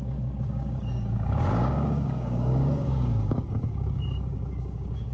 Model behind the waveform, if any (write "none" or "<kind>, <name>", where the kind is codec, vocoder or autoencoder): codec, DAC